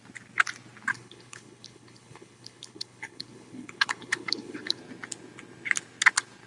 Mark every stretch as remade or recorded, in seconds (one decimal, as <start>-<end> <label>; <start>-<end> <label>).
0.0-0.9 recorded; 0.9-4.8 remade; 4.8-6.5 recorded